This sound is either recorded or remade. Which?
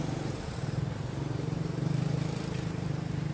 remade